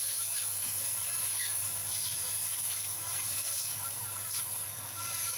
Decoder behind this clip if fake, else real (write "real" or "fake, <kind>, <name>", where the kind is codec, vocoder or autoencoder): fake, codec, SNAC